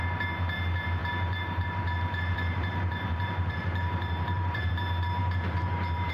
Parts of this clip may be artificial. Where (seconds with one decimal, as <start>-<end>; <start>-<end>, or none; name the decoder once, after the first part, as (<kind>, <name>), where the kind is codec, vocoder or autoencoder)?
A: 1.0-4.7 (vocoder, BigVGAN v2); 5.2-6.1